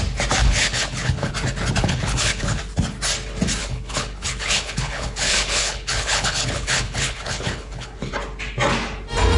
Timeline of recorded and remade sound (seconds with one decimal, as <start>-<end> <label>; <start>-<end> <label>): 0.0-0.4 recorded; 0.4-1.3 remade; 1.3-1.8 recorded; 1.8-2.6 remade; 2.6-3.6 recorded; 3.6-8.1 remade; 8.1-9.4 recorded